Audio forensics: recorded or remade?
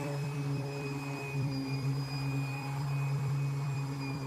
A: remade